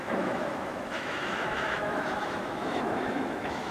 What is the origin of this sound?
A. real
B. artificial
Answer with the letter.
B